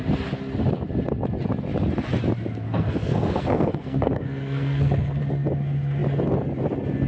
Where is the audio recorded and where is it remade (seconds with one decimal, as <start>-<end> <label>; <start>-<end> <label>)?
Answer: 0.0-2.7 recorded; 2.7-5.2 remade; 5.2-7.1 recorded

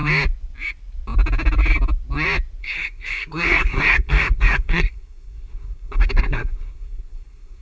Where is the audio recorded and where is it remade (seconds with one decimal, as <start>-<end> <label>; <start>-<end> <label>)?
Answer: 0.0-2.6 recorded; 2.6-7.6 remade

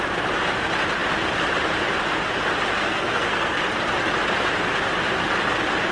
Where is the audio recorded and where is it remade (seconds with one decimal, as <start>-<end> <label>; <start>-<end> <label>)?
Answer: 0.0-2.8 recorded; 2.8-3.6 remade; 3.6-5.9 recorded

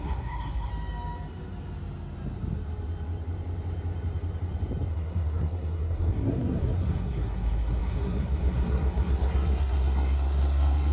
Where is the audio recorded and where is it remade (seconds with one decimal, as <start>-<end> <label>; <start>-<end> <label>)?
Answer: 0.0-0.7 remade; 0.7-4.9 recorded; 4.9-10.9 remade

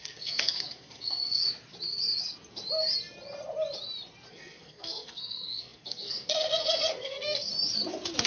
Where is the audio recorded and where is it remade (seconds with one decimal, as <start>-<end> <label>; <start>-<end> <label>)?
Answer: 0.0-1.4 remade; 1.4-4.3 recorded; 4.3-7.5 remade; 7.5-8.3 recorded

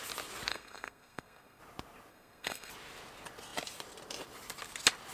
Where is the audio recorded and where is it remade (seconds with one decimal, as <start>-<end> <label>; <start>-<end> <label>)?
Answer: 0.0-0.5 recorded; 0.5-1.6 remade; 1.6-2.1 recorded; 2.1-2.7 remade; 2.7-5.1 recorded